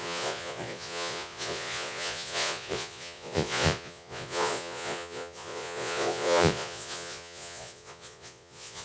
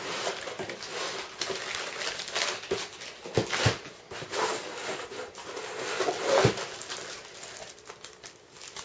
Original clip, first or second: second